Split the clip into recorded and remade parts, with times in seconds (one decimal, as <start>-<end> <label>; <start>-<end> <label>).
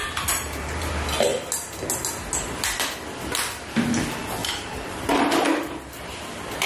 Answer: 0.0-0.9 remade; 0.9-4.4 recorded; 4.4-6.2 remade; 6.2-6.7 recorded